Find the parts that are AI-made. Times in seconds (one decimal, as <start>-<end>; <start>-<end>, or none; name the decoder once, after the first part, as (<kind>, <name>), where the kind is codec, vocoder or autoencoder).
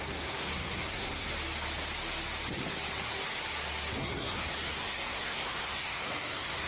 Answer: 0.0-1.3 (codec, SNAC); 4.0-6.7